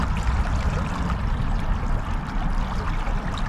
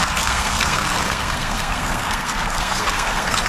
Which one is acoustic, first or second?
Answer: first